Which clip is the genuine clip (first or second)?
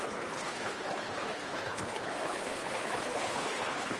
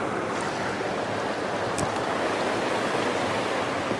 second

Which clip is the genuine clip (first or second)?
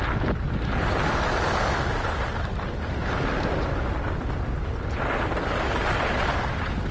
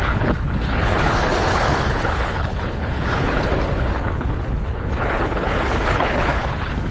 first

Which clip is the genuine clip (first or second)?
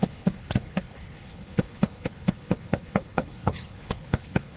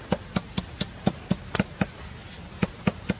second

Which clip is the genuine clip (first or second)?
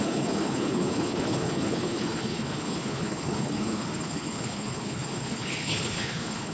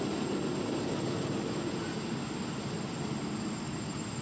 second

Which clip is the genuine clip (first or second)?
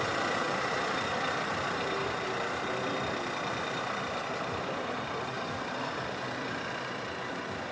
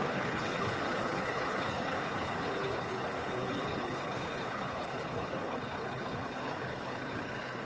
first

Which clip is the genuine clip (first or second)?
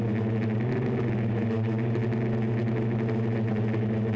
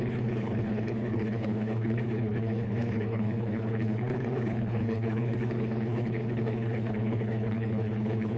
first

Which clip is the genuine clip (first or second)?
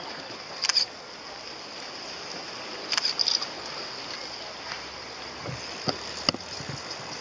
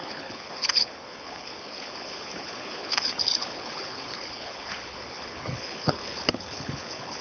first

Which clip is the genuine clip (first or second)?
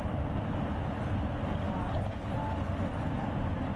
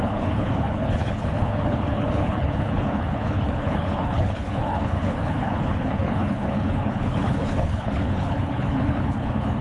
first